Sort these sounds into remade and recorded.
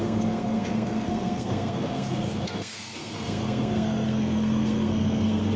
remade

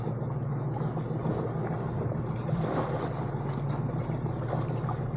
recorded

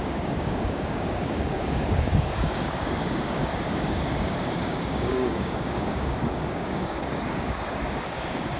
remade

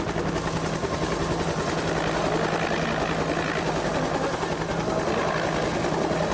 recorded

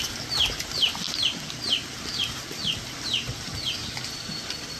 remade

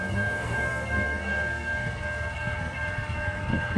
remade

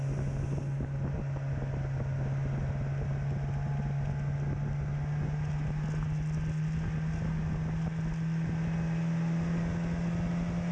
recorded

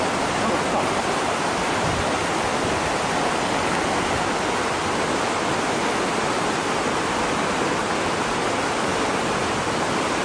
recorded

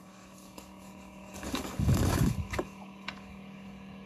remade